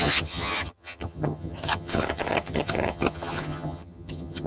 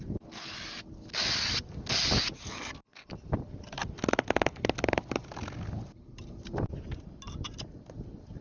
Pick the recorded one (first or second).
second